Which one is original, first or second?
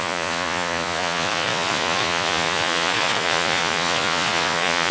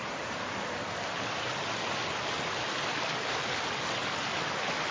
second